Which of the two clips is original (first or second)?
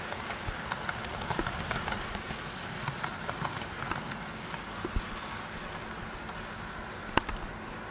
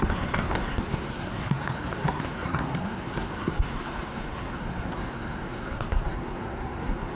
first